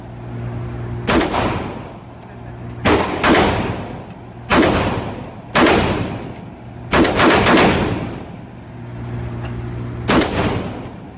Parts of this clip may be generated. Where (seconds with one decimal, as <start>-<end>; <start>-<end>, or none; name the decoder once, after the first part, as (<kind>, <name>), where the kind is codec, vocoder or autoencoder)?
none